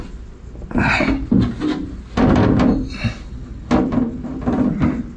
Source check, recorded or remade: recorded